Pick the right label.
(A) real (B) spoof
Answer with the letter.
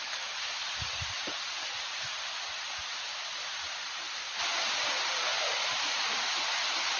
A